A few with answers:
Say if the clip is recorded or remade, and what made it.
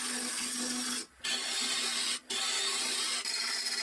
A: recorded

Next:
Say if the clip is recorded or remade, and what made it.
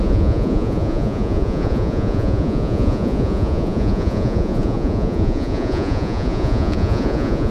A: remade, vocoder, Vocos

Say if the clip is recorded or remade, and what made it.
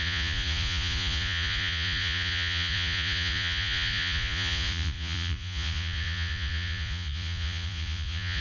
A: remade, vocoder, Vocos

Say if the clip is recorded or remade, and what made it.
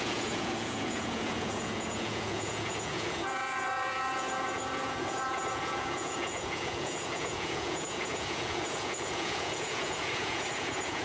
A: remade, vocoder, Vocos